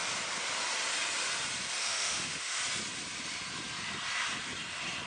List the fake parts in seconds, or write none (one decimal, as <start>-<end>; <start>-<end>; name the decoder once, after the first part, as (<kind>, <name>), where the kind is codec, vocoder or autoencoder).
1.8-2.6 (autoencoder, DAC-VAE)